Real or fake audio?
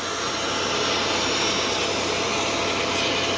real